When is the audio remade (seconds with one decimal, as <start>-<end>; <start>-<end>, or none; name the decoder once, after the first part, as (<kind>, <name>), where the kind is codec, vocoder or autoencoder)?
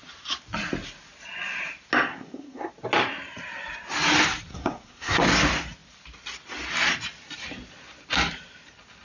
2.1-2.7 (codec, SNAC); 4.5-5.2